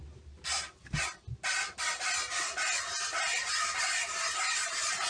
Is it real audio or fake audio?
real